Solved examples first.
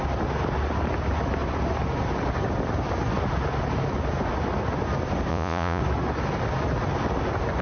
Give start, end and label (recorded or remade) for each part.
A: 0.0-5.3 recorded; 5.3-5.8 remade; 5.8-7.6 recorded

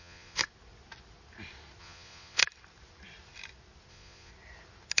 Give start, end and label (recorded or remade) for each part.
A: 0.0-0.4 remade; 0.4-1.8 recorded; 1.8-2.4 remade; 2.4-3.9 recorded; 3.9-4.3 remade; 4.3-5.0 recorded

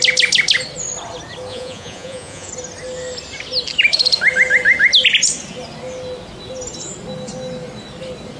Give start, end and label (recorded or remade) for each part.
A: 0.0-1.5 recorded; 1.5-2.5 remade; 2.5-8.4 recorded

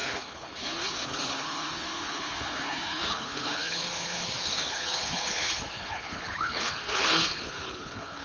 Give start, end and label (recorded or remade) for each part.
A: 0.0-8.2 remade

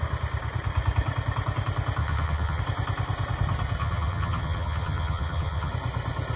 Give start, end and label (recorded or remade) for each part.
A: 0.0-2.0 recorded; 2.0-2.6 remade; 2.6-3.8 recorded; 3.8-5.7 remade; 5.7-6.4 recorded